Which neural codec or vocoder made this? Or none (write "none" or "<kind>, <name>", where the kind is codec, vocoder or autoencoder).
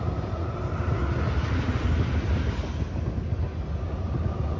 none